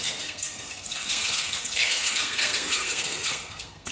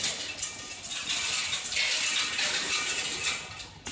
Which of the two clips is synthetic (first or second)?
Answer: first